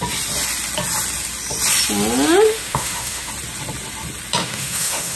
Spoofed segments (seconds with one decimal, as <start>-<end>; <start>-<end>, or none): 2.5-3.3; 4.4-5.2